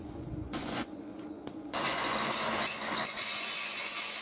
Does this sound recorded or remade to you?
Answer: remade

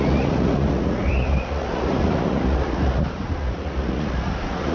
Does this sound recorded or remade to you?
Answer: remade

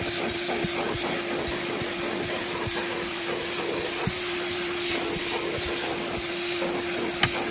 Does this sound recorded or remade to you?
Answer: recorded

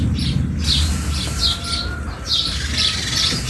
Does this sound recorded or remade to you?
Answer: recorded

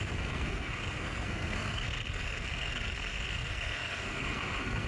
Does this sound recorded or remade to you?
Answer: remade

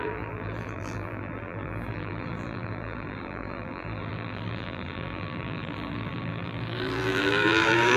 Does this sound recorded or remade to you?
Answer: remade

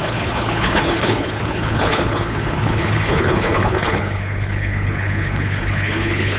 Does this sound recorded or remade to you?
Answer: remade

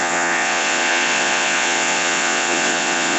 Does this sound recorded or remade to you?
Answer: remade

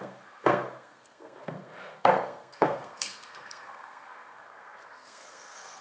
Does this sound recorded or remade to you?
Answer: remade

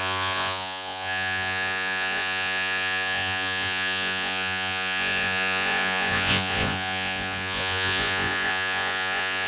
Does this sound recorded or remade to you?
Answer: remade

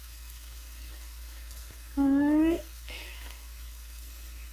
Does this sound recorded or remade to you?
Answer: remade